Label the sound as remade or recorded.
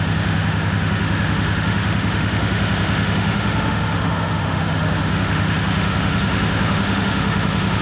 remade